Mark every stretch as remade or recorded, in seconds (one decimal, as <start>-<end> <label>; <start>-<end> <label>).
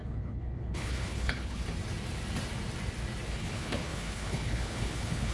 0.0-1.6 remade; 1.6-3.3 recorded; 3.3-5.3 remade